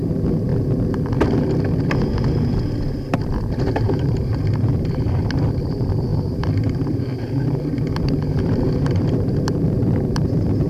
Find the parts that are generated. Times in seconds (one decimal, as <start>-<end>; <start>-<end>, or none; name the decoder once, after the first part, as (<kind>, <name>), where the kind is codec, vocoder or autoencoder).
0.0-0.5 (vocoder, BigVGAN v2); 3.5-10.7